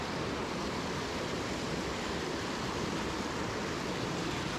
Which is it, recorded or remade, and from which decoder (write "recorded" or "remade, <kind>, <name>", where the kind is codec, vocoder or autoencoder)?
recorded